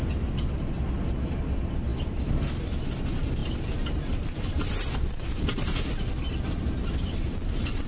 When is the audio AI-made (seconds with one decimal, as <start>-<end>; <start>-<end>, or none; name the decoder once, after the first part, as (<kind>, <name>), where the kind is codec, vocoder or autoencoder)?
1.9-2.7 (vocoder, BigVGAN v2); 3.4-6.3